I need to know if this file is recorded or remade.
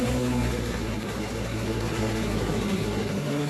remade